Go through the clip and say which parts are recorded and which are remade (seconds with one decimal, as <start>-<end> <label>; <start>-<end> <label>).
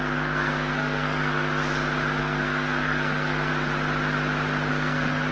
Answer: 0.0-1.6 remade; 1.6-2.2 recorded; 2.2-3.5 remade; 3.5-4.7 recorded; 4.7-5.3 remade